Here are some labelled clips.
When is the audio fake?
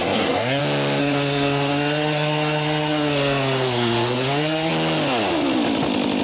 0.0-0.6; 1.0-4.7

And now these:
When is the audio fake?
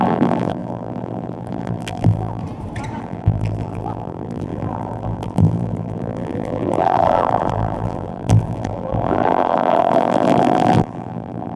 0.0-2.4; 3.0-11.6